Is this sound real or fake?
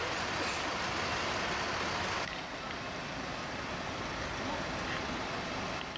real